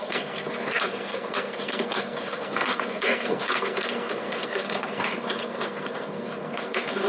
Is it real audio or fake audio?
fake